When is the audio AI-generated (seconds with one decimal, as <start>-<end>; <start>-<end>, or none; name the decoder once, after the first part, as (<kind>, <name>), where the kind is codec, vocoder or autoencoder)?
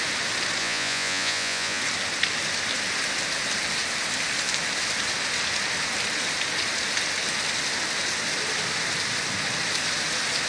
0.6-1.8 (vocoder, Vocos)